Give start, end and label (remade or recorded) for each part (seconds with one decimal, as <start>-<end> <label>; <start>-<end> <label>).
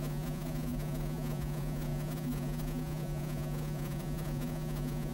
0.0-5.1 remade